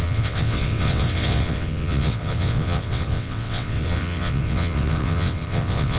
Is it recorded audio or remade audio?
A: remade